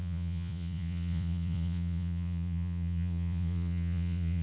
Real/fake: fake